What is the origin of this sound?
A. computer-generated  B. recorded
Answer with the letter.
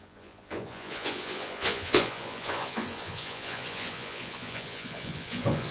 A